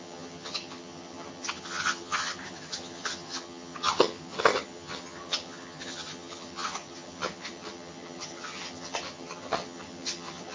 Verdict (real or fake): fake